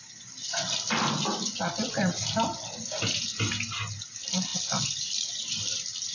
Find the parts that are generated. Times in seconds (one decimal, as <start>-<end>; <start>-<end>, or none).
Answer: none